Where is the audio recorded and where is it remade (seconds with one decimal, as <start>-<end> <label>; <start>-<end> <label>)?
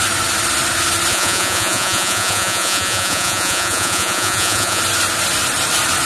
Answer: 0.0-1.1 recorded; 1.1-4.8 remade; 4.8-6.1 recorded